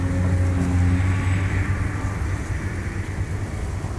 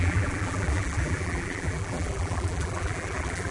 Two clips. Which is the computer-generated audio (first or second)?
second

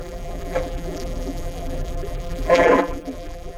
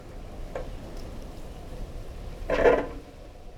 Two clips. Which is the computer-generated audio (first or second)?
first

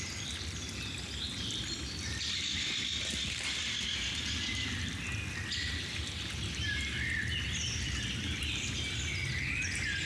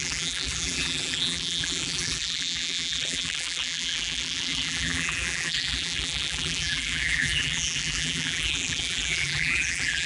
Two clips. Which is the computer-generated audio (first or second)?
second